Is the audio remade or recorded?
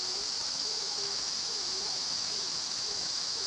remade